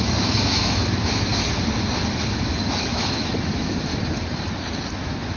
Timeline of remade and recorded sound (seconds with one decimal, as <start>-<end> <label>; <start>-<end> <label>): 0.0-1.3 remade; 1.3-2.2 recorded; 2.2-3.9 remade; 3.9-5.0 recorded; 5.0-5.4 remade